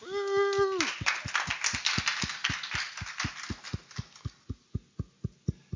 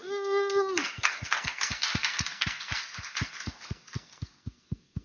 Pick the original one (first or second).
first